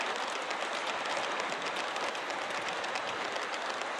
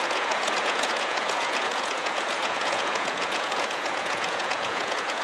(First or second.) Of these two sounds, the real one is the first